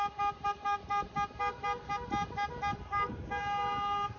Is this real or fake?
real